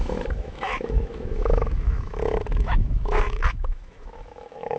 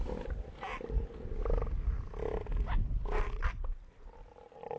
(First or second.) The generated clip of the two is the first